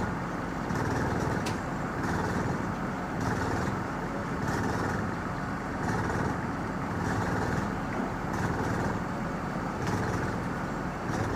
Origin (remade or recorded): remade